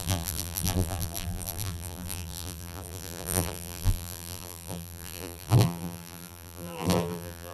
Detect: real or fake fake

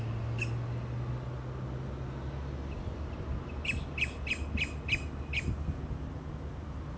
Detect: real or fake real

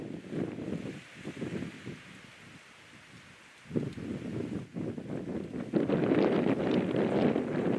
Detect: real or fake real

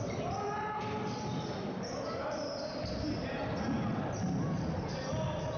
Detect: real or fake real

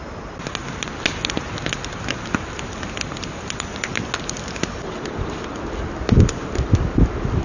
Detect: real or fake real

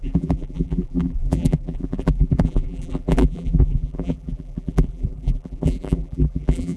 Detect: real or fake fake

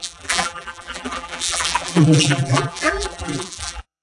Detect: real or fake fake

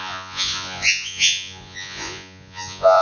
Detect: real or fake fake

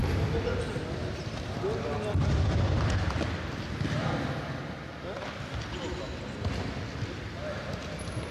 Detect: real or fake real